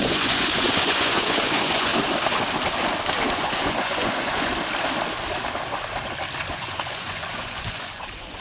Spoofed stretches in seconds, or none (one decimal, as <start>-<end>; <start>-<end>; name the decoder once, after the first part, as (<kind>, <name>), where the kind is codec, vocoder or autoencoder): 0.0-1.9 (vocoder, Vocos); 3.3-4.5; 6.5-8.4